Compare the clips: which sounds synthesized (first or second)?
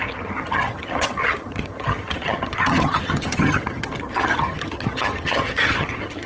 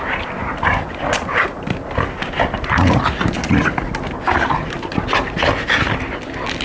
first